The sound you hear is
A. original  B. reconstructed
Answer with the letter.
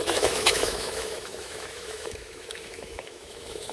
B